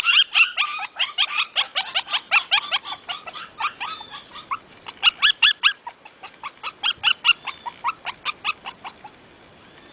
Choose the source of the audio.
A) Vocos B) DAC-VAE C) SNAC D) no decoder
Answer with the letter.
D